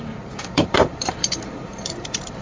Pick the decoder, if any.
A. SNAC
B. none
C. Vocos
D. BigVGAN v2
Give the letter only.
D